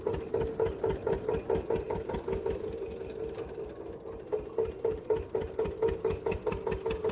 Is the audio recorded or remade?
recorded